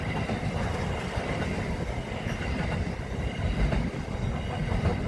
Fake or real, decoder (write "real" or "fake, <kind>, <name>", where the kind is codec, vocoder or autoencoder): real